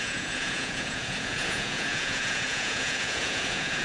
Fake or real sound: fake